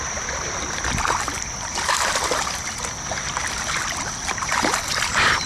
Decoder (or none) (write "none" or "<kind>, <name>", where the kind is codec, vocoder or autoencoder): vocoder, BigVGAN v2